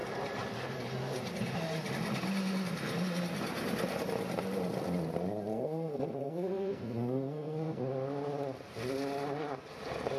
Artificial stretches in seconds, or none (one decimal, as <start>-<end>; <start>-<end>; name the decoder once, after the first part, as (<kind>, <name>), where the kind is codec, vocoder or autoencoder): 5.5-7.8 (codec, SNAC)